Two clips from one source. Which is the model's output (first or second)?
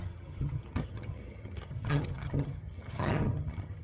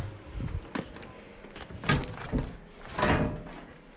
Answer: first